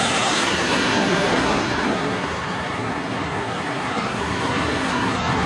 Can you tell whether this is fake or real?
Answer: fake